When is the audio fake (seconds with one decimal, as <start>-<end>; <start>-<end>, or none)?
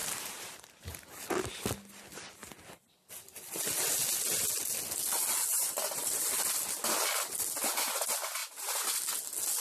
0.0-0.9; 5.5-6.3; 8.4-9.0